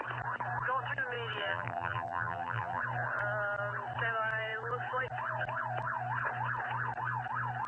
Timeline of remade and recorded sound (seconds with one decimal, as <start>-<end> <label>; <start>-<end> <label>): 0.0-1.4 recorded; 1.4-2.8 remade; 2.8-7.7 recorded